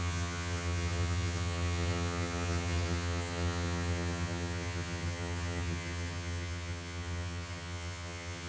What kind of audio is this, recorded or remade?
remade